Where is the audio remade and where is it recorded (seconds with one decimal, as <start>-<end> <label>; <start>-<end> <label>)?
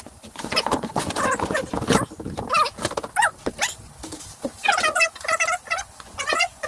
0.0-1.6 remade; 1.6-5.6 recorded; 5.6-6.7 remade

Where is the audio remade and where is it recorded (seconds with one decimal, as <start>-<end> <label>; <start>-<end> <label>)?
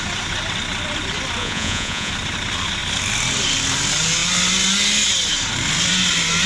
0.0-1.4 recorded; 1.4-2.1 remade; 2.1-6.5 recorded